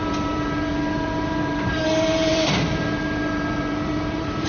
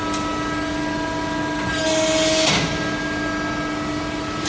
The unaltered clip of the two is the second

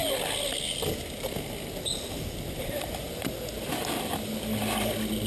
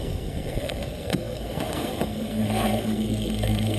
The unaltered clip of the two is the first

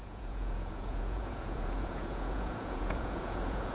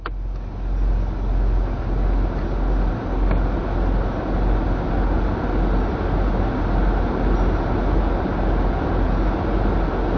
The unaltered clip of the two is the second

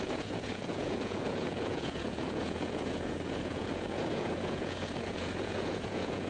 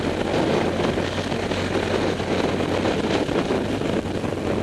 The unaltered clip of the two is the second